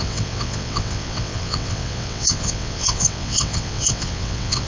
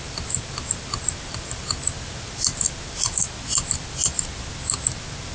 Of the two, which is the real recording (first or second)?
second